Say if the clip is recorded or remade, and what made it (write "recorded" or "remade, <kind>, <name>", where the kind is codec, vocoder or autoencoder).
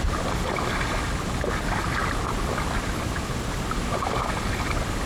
recorded